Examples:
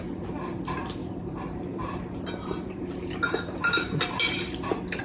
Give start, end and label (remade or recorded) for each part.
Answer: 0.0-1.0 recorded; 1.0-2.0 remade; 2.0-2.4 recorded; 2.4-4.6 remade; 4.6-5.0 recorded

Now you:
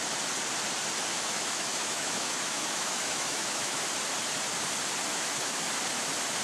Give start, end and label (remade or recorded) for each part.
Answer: 0.0-1.1 recorded; 1.1-3.8 remade; 3.8-5.1 recorded; 5.1-5.7 remade; 5.7-6.4 recorded